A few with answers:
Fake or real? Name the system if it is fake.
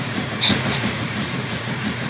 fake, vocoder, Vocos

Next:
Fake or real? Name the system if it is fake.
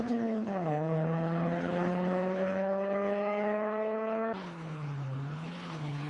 fake, codec, HILCodec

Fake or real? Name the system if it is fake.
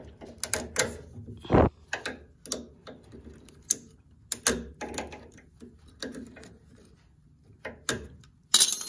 real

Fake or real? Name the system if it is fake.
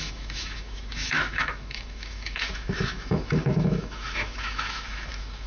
fake, autoencoder, DAC-VAE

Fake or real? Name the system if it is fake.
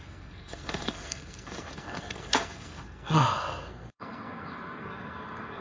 fake, codec, SNAC